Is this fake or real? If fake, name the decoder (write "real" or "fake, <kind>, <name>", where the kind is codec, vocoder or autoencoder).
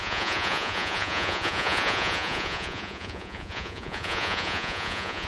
fake, vocoder, Vocos